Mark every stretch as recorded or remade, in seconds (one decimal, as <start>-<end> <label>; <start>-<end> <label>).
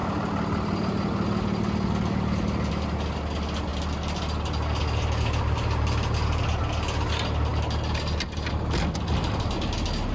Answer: 0.0-10.1 recorded